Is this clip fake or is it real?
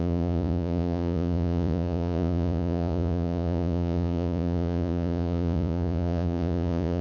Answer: fake